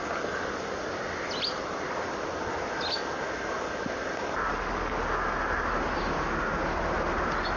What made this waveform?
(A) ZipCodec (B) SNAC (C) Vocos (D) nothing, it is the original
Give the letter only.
D